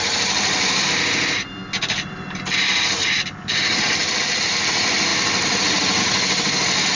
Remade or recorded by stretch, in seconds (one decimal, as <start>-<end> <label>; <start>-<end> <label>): 0.0-1.6 remade; 1.6-3.4 recorded; 3.4-5.1 remade; 5.1-6.0 recorded; 6.0-7.0 remade